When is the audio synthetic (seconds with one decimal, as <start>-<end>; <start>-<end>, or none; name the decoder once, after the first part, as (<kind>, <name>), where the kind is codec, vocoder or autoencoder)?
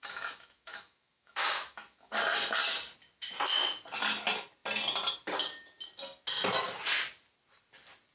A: 0.0-2.2 (autoencoder, DAC-VAE)